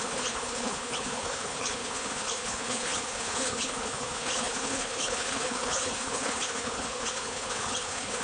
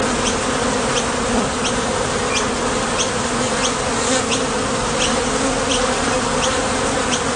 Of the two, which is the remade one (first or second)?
first